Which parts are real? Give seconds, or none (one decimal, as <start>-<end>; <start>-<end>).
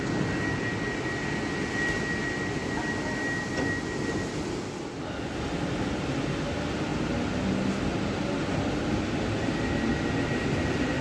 0.0-11.0